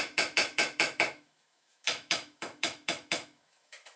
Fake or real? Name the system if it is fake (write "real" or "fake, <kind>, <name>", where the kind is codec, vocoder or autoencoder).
fake, autoencoder, DAC-VAE